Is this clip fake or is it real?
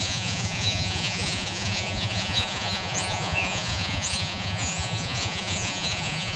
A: fake